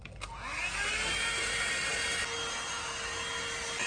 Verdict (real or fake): real